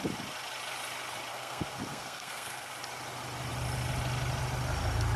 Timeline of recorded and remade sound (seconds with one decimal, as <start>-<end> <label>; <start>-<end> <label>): 0.0-1.3 recorded; 1.3-2.7 remade; 2.7-5.2 recorded